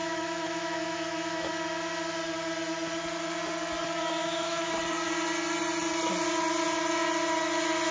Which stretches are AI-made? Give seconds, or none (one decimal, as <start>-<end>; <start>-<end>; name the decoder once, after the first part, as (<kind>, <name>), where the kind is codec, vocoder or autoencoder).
0.0-1.5 (autoencoder, DAC-VAE); 4.2-4.7